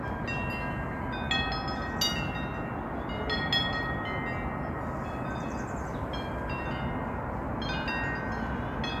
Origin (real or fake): real